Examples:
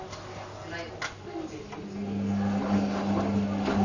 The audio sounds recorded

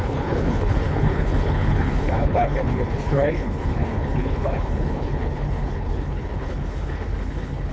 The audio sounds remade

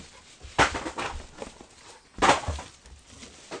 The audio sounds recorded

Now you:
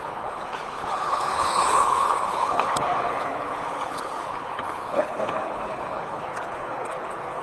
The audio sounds remade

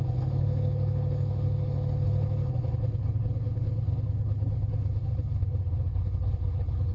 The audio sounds remade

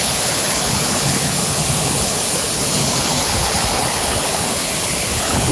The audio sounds remade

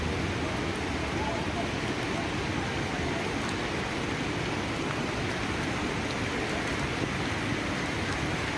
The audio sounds recorded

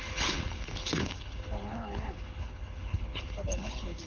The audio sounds remade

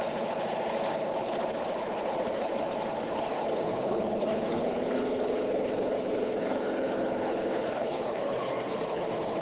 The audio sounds remade